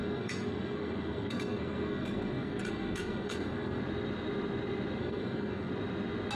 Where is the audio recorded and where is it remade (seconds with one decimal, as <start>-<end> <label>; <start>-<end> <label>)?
0.0-3.8 remade; 3.8-5.0 recorded; 5.0-5.7 remade; 5.7-6.4 recorded